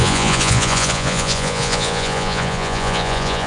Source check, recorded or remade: remade